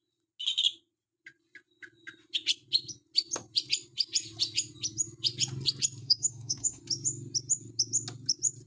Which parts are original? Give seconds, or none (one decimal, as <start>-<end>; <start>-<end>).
0.0-6.0; 6.8-8.7